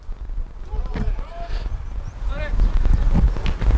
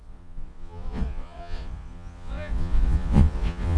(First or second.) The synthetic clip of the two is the second